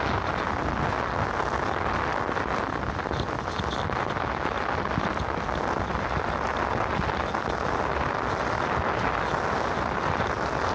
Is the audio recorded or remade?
recorded